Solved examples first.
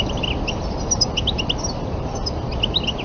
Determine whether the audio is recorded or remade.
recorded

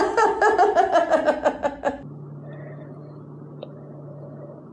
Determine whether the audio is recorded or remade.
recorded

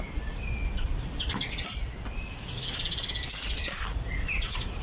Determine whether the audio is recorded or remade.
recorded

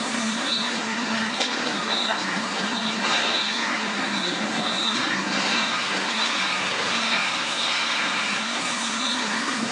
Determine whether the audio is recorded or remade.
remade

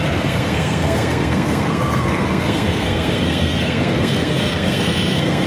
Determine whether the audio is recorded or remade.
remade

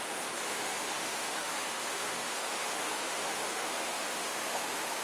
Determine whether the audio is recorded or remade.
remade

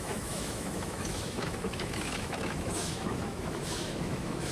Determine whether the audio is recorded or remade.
remade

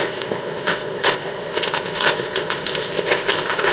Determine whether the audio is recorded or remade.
remade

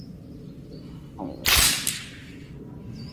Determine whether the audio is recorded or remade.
recorded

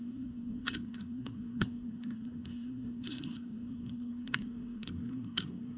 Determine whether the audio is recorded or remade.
remade